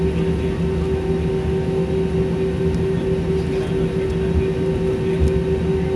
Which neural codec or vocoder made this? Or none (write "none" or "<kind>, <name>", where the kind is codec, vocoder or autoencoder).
none